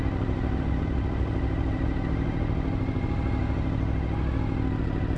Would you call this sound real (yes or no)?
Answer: yes